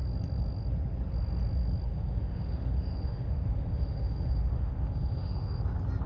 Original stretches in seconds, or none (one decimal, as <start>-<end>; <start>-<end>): 0.0-1.9; 5.6-6.1